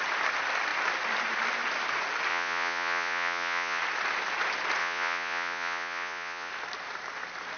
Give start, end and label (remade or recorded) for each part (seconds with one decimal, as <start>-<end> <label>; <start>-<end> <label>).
0.0-2.3 recorded; 2.3-3.8 remade; 3.8-4.8 recorded; 4.8-6.5 remade; 6.5-7.6 recorded